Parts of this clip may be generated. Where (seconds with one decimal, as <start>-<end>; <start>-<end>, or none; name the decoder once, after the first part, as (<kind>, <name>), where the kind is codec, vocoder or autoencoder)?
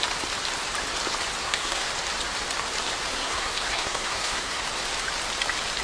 1.4-1.9 (codec, SNAC); 3.1-4.6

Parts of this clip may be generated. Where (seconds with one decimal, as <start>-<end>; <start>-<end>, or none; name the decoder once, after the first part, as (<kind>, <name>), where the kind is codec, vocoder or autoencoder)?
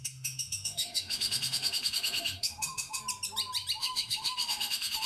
0.0-3.0 (autoencoder, DAC-VAE); 3.8-5.1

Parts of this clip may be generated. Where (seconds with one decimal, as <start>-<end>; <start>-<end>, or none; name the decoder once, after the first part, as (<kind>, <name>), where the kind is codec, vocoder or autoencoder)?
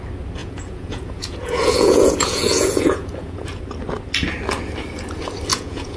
0.4-3.6 (vocoder, Vocos); 5.5-6.0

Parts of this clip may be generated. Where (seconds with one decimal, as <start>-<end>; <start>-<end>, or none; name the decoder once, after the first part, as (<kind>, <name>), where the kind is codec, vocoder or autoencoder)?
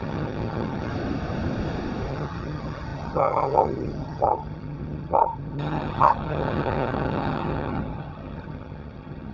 0.0-0.9 (vocoder, HiFi-GAN); 2.1-9.3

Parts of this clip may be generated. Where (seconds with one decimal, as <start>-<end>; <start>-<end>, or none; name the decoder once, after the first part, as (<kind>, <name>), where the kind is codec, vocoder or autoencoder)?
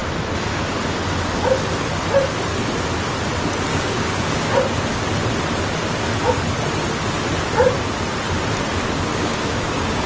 3.7-4.6 (codec, DAC); 9.1-10.1